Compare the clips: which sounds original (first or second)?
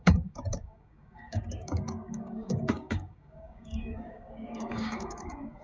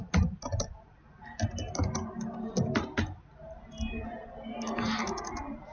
second